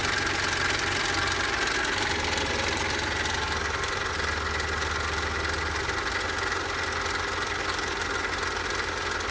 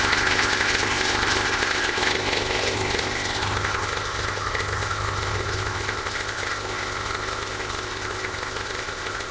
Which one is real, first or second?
first